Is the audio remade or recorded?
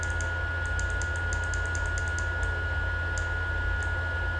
recorded